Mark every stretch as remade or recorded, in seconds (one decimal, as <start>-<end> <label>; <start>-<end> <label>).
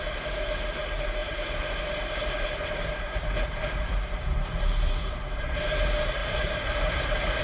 0.0-1.2 recorded; 1.2-5.6 remade; 5.6-6.2 recorded; 6.2-7.4 remade